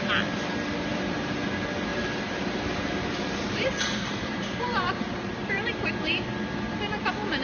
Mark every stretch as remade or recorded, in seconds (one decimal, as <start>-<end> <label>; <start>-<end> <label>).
0.0-0.9 recorded; 0.9-1.5 remade; 1.5-1.9 recorded; 1.9-6.3 remade; 6.3-7.4 recorded